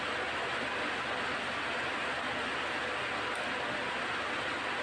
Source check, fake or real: real